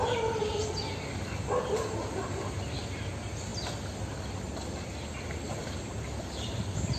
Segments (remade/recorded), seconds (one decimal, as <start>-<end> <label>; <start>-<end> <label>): 0.0-7.0 recorded